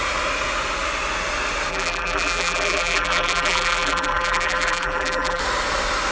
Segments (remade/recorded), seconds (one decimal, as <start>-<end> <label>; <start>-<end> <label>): 0.0-1.7 recorded; 1.7-5.4 remade; 5.4-6.1 recorded